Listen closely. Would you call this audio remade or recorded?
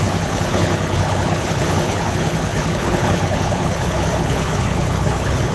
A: remade